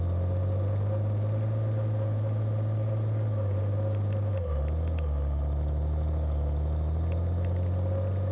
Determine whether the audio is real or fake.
real